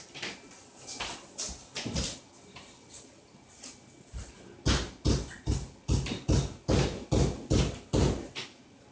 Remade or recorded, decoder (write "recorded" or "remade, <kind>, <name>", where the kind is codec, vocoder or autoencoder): recorded